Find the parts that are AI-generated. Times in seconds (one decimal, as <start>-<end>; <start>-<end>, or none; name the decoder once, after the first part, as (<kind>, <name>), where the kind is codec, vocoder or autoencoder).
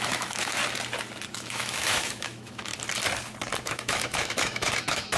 0.0-0.6 (autoencoder, DAC-VAE); 1.3-2.7; 3.6-5.2